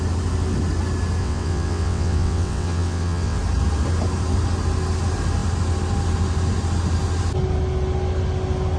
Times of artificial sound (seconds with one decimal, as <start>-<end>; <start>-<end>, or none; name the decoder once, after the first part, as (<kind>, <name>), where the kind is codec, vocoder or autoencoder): 1.2-3.4 (vocoder, WaveNeXt)